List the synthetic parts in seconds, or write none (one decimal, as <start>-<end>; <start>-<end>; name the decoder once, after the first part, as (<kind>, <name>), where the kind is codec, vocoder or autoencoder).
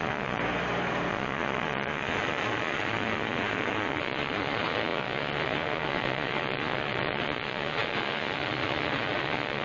0.0-0.4 (vocoder, Vocos); 1.1-9.6